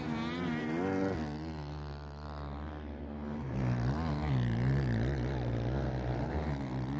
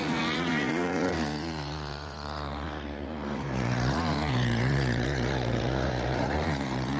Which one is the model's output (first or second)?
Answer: second